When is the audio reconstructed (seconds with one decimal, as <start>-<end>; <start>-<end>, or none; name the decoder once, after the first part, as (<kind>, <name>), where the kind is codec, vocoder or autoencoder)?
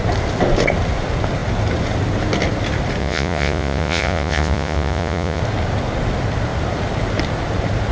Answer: 3.0-5.4 (vocoder, Vocos)